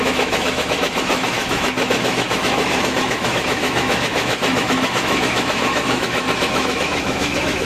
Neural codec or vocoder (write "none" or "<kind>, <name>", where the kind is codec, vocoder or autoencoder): autoencoder, DAC-VAE